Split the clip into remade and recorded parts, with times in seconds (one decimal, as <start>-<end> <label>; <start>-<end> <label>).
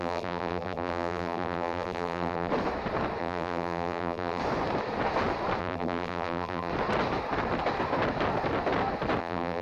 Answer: 0.0-2.5 remade; 2.5-3.2 recorded; 3.2-4.4 remade; 4.4-5.6 recorded; 5.6-6.7 remade; 6.7-9.2 recorded; 9.2-9.6 remade